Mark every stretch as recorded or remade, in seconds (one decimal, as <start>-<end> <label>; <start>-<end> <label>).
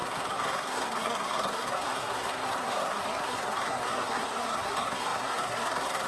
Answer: 0.0-6.1 remade